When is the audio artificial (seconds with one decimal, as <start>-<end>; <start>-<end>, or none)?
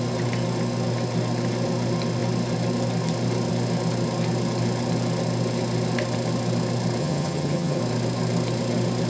7.0-7.8